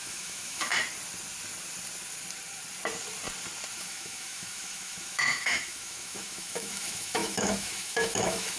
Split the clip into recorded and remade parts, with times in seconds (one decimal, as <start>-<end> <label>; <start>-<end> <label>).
0.0-0.7 remade; 0.7-3.8 recorded; 3.8-8.6 remade